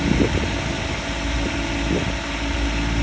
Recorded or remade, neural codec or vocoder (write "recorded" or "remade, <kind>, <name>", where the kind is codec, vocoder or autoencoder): recorded